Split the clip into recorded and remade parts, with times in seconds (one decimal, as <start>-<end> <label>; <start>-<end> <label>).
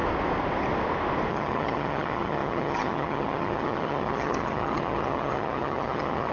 0.0-1.3 recorded; 1.3-6.3 remade